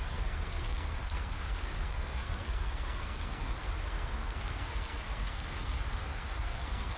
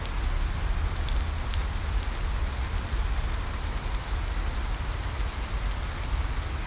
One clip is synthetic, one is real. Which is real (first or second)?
second